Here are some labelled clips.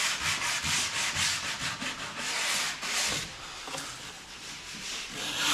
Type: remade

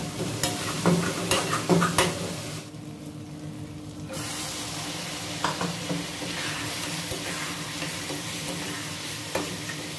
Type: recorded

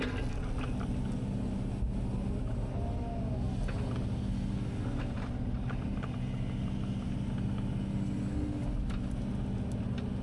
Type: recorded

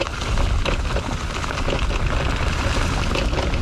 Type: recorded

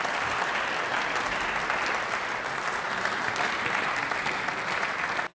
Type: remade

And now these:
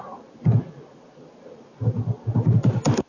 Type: recorded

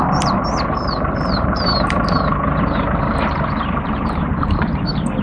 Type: remade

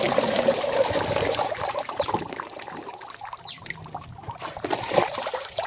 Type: remade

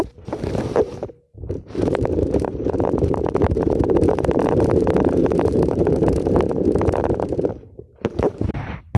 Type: remade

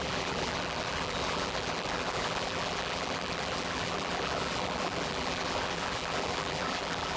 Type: remade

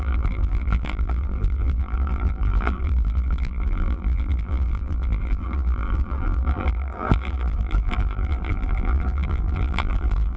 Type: remade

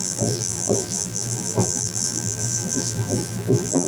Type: remade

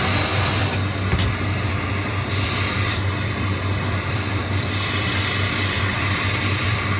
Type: remade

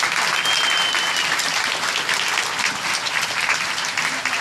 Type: recorded